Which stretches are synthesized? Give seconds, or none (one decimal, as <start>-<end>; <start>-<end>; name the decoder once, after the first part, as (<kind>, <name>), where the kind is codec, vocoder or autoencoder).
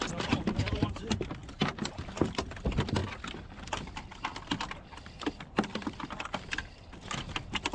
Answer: none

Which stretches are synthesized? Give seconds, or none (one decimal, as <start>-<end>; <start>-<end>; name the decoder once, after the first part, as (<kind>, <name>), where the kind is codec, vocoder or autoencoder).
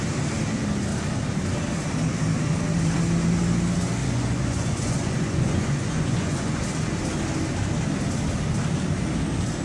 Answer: 4.0-6.6 (vocoder, Vocos)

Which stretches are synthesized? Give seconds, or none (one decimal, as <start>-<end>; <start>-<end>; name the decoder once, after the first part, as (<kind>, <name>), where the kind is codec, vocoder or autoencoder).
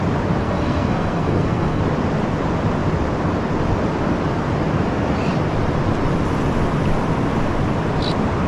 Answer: 0.4-1.8 (codec, SNAC)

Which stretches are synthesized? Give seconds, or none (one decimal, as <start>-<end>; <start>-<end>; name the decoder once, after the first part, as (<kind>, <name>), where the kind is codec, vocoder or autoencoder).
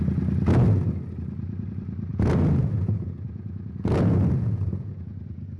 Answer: 2.1-5.6 (vocoder, Vocos)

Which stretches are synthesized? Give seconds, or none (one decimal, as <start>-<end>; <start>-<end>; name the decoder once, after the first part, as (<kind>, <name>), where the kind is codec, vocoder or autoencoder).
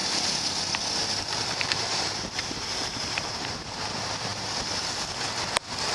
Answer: 1.2-4.3 (vocoder, BigVGAN v2)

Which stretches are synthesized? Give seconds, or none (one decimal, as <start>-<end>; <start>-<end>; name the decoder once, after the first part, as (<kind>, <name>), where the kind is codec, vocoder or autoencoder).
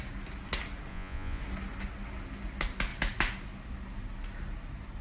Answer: 0.9-1.4 (vocoder, Vocos)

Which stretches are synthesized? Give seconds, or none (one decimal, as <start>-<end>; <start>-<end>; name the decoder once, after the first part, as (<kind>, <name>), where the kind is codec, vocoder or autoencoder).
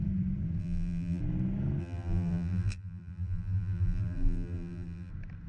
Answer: 0.6-1.2 (vocoder, BigVGAN v2); 1.8-5.1